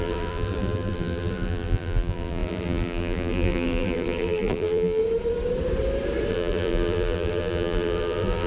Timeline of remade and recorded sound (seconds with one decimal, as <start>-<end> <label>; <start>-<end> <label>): 0.0-5.0 remade; 5.0-6.3 recorded; 6.3-8.5 remade

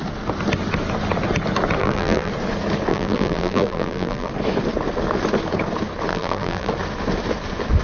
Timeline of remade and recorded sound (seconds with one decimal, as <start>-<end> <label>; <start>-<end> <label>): 0.0-1.8 recorded; 1.8-2.3 remade; 2.3-2.9 recorded; 2.9-4.3 remade; 4.3-6.1 recorded; 6.1-6.7 remade; 6.7-7.8 recorded

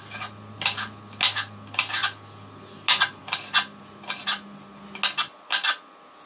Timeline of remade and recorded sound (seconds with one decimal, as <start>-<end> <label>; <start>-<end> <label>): 0.0-6.3 recorded